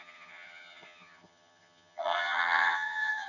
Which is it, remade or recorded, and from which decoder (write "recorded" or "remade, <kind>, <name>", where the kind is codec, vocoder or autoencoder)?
remade, vocoder, HiFi-GAN